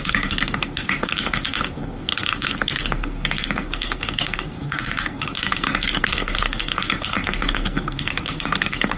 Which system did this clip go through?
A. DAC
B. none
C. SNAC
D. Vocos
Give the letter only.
C